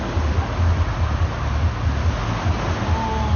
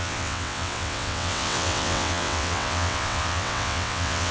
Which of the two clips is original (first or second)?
first